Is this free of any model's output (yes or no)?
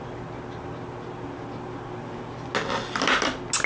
yes